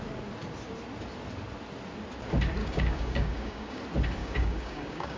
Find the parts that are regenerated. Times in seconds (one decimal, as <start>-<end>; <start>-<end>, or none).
2.6-3.8; 4.2-5.2